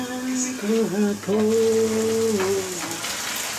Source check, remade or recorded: recorded